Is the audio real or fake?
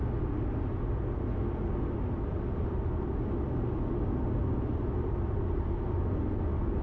real